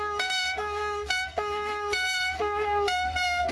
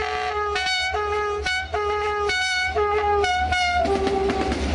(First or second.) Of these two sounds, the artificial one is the first